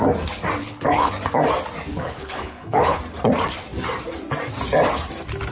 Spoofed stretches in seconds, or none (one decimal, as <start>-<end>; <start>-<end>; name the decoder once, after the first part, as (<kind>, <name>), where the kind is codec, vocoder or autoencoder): 0.6-1.1 (codec, HILCodec); 1.9-3.0